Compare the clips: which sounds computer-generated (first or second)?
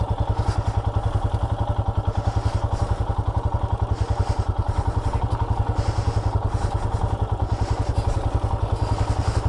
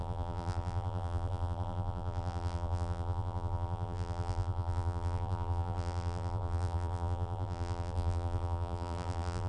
second